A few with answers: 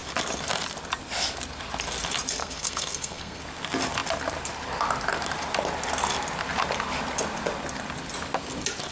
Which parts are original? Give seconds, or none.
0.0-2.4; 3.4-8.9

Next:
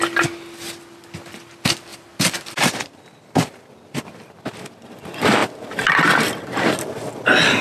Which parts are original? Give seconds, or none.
0.0-1.9; 4.3-5.4; 6.7-7.6

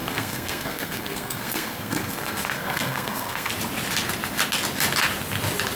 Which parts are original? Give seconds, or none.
3.5-5.8

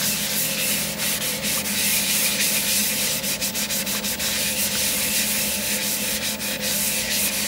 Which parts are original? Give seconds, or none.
0.0-2.8; 3.5-7.5

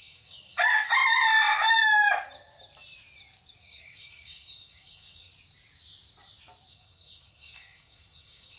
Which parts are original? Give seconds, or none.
1.0-3.6; 5.3-6.7

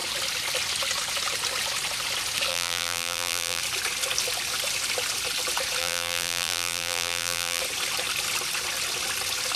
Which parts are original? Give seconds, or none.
0.0-2.5; 3.6-5.8; 7.6-9.6